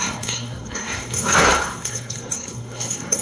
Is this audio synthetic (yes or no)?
yes